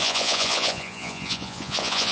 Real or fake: fake